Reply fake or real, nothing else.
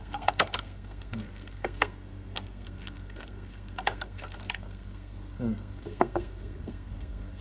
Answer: fake